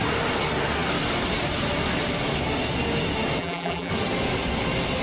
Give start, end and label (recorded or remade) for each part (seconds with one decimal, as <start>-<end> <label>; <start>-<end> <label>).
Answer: 0.0-3.4 recorded; 3.4-3.9 remade; 3.9-5.0 recorded